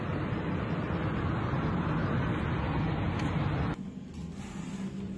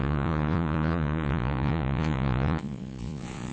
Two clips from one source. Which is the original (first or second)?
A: first